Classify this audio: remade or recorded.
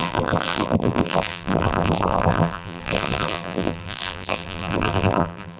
remade